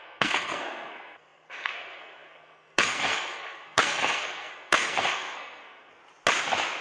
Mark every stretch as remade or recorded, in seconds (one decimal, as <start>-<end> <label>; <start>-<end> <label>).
0.0-6.0 remade; 6.0-6.8 recorded